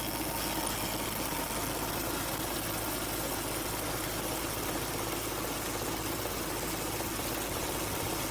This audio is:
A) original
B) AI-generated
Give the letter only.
A